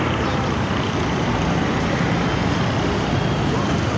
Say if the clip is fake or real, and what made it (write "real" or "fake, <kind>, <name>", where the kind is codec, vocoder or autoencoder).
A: real